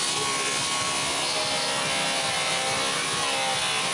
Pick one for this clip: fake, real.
real